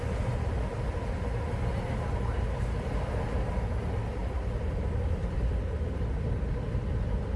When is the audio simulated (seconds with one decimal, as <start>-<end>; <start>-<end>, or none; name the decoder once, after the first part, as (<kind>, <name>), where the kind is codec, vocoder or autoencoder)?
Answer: 4.2-7.4 (vocoder, BigVGAN v2)